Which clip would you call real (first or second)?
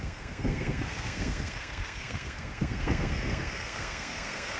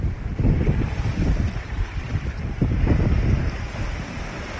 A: second